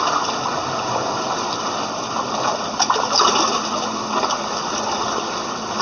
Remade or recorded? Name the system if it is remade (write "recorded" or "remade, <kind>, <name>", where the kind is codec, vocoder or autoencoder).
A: recorded